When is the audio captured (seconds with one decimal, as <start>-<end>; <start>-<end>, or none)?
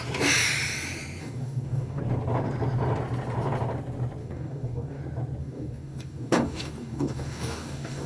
0.0-1.2; 2.0-4.2; 5.0-5.4